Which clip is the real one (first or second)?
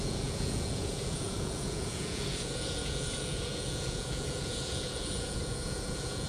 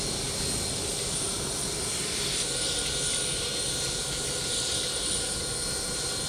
second